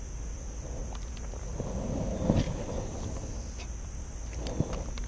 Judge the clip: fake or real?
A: real